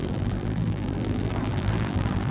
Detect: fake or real fake